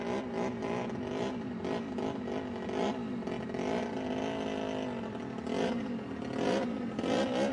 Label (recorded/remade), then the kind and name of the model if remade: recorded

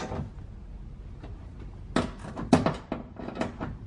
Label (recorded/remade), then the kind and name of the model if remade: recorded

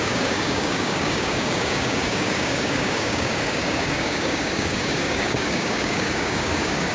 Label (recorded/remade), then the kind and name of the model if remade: remade, codec, DAC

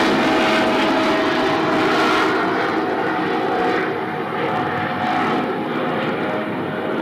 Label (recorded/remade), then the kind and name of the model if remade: recorded